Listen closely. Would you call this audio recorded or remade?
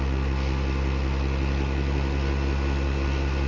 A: recorded